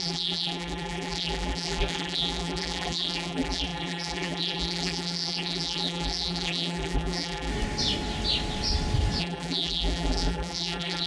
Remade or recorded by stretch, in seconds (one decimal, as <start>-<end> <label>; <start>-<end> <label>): 0.0-7.5 remade; 7.5-9.2 recorded; 9.2-11.1 remade